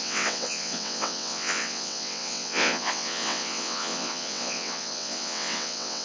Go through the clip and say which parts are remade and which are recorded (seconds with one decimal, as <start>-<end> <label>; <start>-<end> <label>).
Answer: 0.0-6.0 remade